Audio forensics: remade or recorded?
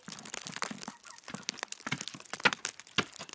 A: recorded